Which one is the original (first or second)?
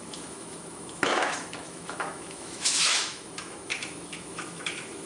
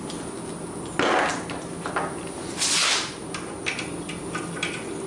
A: second